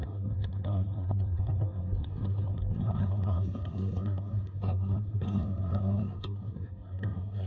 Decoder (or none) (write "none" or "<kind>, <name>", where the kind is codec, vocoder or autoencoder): codec, SNAC